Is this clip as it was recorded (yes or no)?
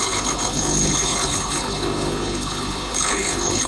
no